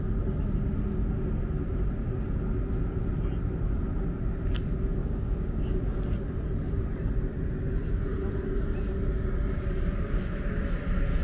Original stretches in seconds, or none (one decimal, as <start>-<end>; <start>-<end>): 0.0-5.0; 5.8-11.2

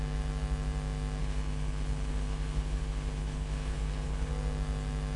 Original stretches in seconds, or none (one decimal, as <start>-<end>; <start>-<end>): 0.0-1.2; 4.3-5.2